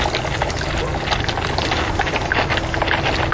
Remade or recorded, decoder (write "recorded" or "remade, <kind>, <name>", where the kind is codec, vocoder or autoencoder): recorded